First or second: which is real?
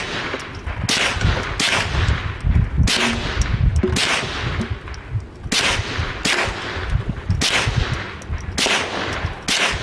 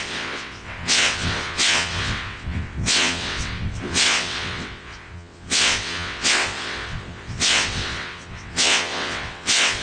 first